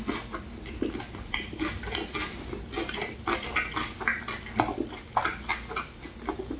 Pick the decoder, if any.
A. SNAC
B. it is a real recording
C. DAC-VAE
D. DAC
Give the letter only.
B